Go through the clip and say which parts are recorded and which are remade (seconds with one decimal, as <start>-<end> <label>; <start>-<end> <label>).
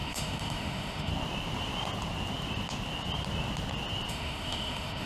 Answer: 0.0-1.1 remade; 1.1-4.1 recorded; 4.1-5.1 remade